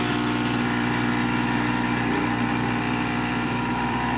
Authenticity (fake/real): fake